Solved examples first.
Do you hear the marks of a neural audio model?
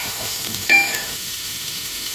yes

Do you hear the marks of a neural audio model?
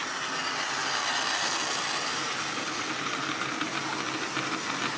no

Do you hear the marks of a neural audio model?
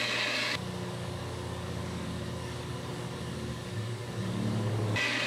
yes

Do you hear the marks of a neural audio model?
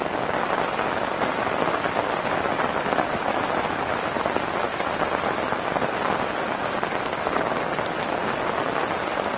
no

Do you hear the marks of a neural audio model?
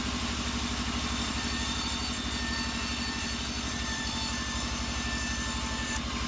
yes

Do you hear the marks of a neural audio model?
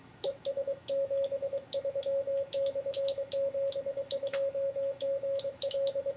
yes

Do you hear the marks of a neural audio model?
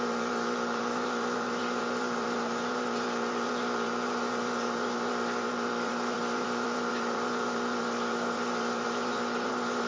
yes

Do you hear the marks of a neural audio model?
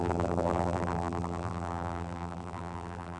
yes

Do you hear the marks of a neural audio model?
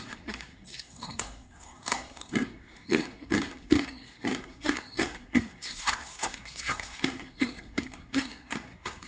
yes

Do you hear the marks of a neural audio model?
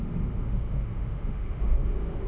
yes